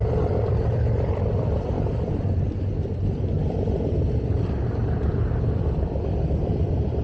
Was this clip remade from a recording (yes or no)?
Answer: no